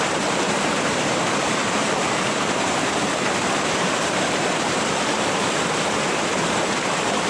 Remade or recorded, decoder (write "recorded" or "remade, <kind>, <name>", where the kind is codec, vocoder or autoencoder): remade, vocoder, BigVGAN v2